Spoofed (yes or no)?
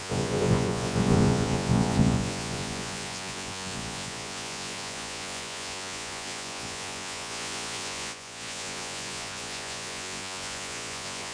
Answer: yes